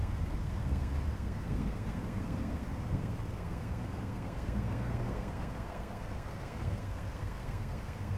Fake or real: fake